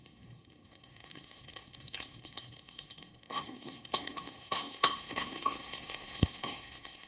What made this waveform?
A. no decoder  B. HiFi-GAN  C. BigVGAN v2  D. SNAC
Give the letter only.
D